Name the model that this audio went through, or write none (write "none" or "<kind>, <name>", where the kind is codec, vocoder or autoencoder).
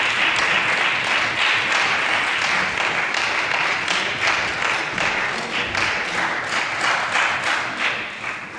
none